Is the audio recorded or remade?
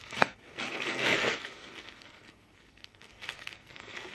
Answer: remade